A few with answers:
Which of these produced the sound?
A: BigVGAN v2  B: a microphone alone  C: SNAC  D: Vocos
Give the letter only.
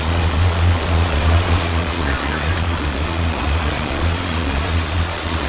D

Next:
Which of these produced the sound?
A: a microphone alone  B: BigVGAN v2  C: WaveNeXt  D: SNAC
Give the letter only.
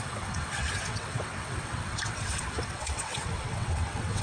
C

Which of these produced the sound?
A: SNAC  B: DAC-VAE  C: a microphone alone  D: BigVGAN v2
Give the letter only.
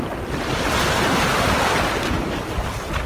C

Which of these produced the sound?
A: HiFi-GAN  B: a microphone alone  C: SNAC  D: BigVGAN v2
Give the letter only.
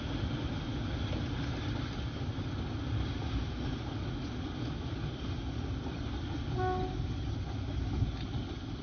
B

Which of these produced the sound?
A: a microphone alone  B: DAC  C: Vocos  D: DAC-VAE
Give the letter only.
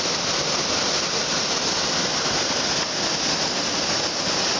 A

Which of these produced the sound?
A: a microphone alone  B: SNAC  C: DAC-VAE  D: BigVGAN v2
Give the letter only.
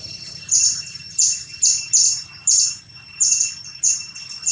D